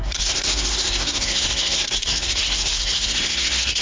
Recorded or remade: remade